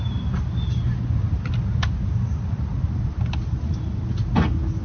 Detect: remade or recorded recorded